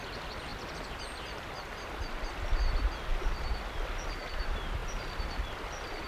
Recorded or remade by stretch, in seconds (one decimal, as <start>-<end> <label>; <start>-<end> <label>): 0.0-0.5 remade; 0.5-2.1 recorded; 2.1-4.8 remade; 4.8-5.4 recorded; 5.4-6.1 remade